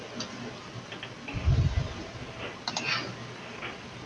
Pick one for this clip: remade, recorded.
recorded